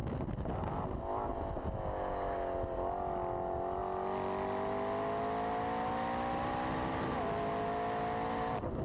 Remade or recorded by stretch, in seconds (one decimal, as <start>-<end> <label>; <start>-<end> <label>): 0.0-8.8 recorded